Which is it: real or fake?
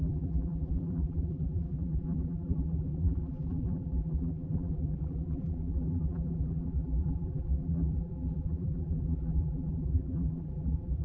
fake